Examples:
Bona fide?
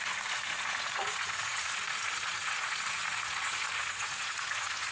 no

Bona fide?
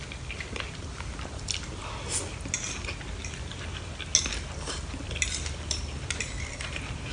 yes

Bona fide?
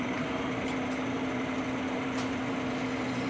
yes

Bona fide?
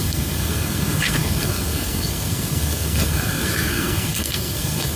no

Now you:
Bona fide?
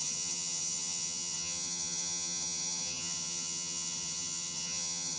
no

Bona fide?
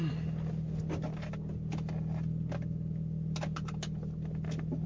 yes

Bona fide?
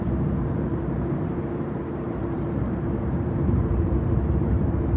no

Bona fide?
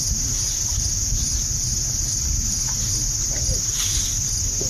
yes